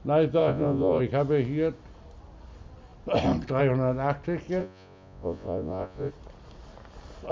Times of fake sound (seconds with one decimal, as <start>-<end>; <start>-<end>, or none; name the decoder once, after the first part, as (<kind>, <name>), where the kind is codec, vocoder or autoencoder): 0.4-1.0 (vocoder, Vocos); 4.6-6.1